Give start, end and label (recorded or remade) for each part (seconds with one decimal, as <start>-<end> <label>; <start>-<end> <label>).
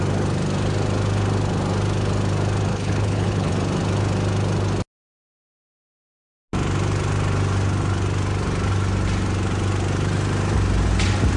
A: 0.0-2.7 recorded; 2.7-3.5 remade; 3.5-11.4 recorded